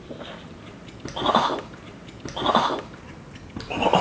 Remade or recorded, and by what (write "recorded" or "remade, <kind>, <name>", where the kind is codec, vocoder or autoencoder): recorded